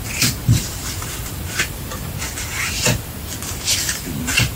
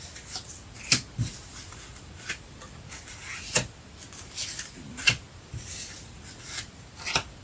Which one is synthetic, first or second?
first